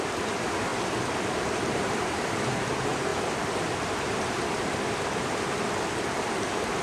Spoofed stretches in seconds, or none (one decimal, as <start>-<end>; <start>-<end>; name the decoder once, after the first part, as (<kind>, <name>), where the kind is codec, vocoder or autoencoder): 0.0-0.7 (vocoder, BigVGAN v2); 1.3-3.1; 6.3-6.8